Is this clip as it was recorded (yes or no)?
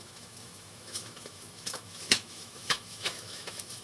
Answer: no